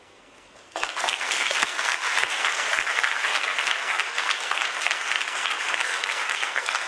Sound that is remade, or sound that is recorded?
remade